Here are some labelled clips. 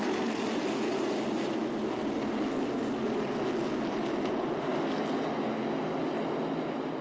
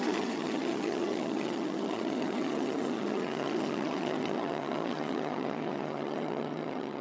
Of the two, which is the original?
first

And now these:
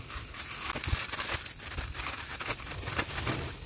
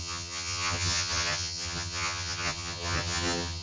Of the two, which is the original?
first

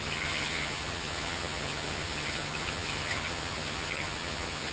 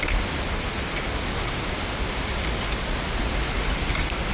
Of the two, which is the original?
second